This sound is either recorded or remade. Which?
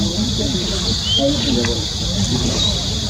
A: recorded